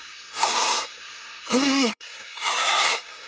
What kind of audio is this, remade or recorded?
remade